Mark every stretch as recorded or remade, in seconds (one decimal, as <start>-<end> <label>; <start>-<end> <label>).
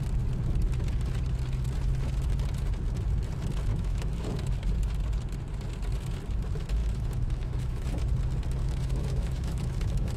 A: 0.0-3.7 recorded; 3.7-4.5 remade; 4.5-6.8 recorded; 6.8-8.0 remade; 8.0-8.6 recorded; 8.6-10.2 remade